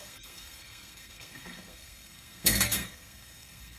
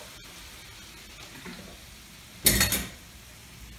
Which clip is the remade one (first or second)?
first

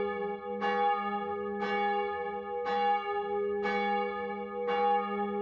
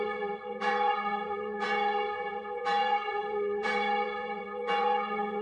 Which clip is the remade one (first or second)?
second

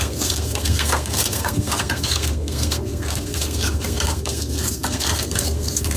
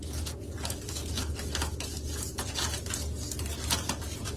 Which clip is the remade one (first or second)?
first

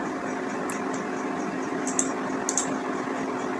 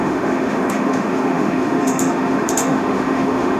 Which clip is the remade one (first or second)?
second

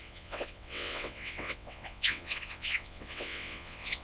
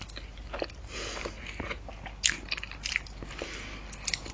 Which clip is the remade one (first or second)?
first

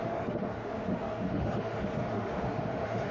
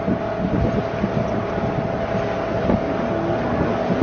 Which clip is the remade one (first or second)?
first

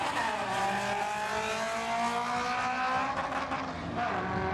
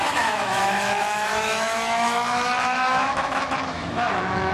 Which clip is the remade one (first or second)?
second